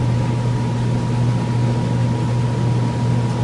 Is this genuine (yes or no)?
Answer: yes